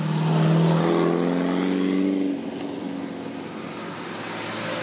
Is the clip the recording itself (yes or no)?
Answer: yes